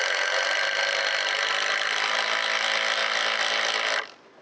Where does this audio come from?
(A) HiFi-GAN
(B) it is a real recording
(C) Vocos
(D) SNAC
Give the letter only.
B